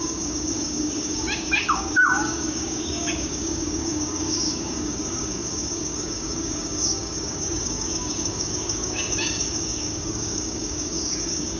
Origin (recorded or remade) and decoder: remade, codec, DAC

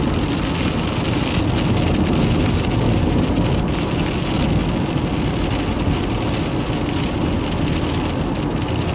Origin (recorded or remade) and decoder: recorded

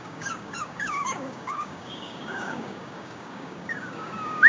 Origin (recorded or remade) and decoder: remade, codec, DAC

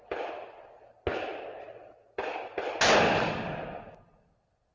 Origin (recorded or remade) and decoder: recorded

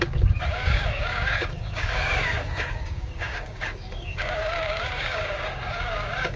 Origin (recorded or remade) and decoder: remade, codec, DAC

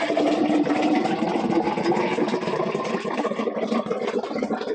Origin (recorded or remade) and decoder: recorded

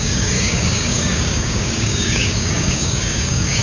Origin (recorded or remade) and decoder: remade, codec, DAC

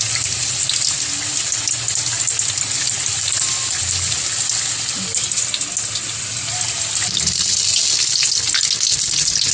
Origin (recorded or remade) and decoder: recorded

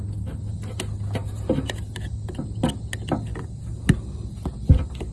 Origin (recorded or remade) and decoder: recorded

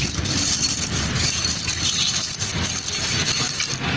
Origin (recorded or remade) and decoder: recorded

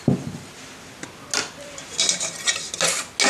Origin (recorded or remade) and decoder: recorded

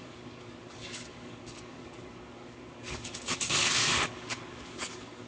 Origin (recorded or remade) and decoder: remade, codec, DAC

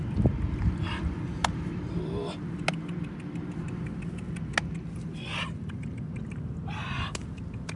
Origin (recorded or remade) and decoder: recorded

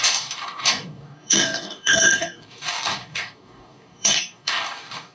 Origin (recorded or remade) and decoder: remade, codec, DAC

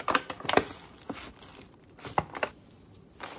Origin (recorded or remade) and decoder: recorded